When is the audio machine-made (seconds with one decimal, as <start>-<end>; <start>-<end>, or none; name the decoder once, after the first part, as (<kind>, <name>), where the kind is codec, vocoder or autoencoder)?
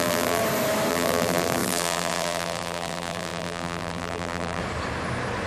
0.0-0.4 (vocoder, BigVGAN v2); 0.9-4.6